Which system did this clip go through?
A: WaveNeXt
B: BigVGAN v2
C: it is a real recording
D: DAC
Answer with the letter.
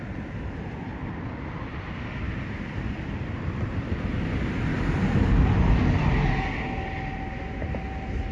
C